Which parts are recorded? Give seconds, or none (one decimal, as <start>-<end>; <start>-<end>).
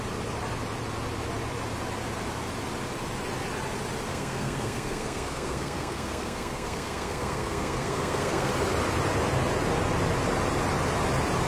0.0-4.1; 8.5-11.5